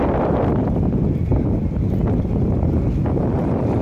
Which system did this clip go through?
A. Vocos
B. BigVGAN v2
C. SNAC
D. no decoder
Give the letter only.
D